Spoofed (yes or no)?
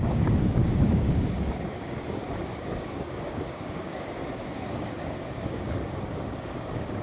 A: yes